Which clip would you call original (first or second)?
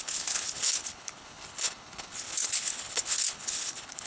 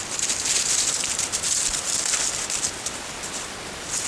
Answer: second